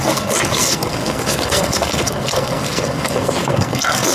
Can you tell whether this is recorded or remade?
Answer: remade